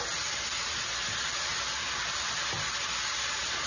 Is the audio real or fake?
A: real